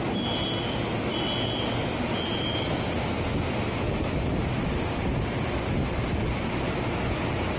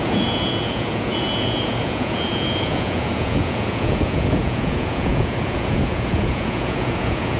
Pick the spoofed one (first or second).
second